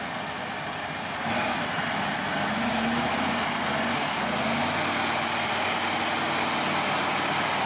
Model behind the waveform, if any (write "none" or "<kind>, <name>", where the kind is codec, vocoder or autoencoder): none